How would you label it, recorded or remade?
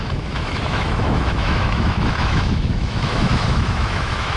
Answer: remade